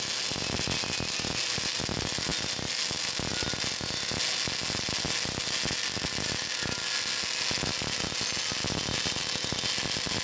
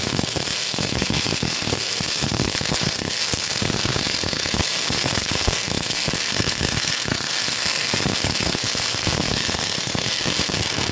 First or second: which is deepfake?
second